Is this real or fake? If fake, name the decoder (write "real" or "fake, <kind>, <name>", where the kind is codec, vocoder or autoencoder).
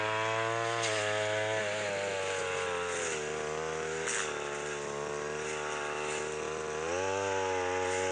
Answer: real